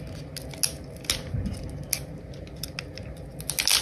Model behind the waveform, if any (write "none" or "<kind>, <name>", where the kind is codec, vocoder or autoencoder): none